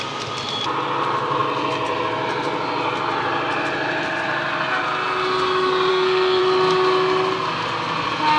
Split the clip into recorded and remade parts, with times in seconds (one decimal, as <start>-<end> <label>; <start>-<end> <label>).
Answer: 0.0-5.9 recorded; 5.9-6.4 remade; 6.4-8.4 recorded